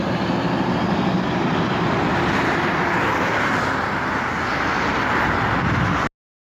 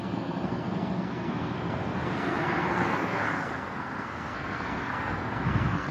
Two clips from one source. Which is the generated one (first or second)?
second